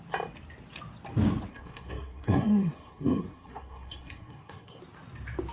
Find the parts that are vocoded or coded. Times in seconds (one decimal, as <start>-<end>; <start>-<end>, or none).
1.5-4.8

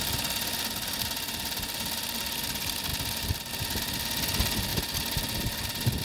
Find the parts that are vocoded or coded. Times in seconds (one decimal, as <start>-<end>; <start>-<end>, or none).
none

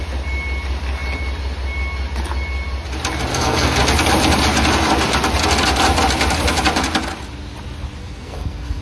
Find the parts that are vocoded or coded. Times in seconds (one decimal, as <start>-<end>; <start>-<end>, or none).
3.3-3.8; 8.0-8.8

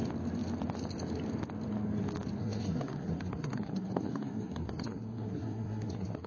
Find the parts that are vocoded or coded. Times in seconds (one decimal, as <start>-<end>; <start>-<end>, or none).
2.4-6.3

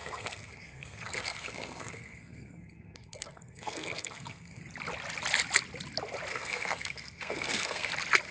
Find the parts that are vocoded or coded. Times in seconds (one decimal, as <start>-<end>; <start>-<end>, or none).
0.0-4.6; 6.3-7.9